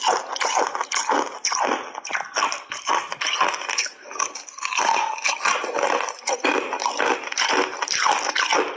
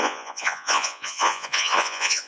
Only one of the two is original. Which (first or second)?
first